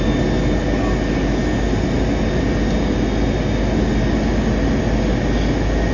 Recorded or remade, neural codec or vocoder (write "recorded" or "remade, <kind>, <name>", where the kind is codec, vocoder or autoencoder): recorded